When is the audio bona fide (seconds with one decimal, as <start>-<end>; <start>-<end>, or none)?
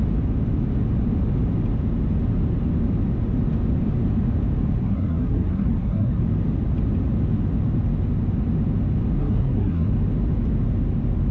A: 0.0-4.8; 6.2-9.2; 9.9-11.3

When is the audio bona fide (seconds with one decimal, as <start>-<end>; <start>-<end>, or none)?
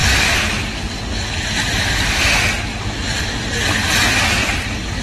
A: 0.0-2.7; 3.3-4.4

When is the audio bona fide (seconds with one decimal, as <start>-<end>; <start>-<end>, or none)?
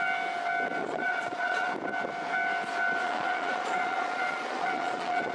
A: 0.0-0.8; 1.7-3.0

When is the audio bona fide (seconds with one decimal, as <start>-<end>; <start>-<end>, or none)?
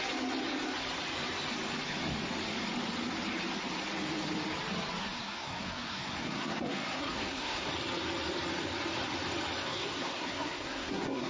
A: 0.0-5.0; 7.7-9.6